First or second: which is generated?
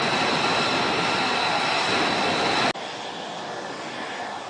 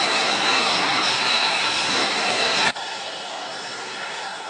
second